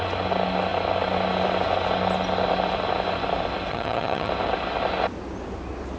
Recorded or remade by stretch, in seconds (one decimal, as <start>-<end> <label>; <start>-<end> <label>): 0.0-3.7 recorded; 3.7-4.3 remade; 4.3-6.0 recorded